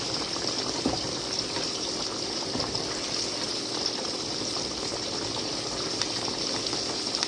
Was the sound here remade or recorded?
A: remade